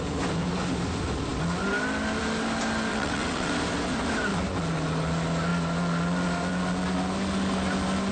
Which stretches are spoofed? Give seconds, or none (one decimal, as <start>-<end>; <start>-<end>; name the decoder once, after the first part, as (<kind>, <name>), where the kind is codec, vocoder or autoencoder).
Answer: 2.9-3.5 (vocoder, WaveNeXt)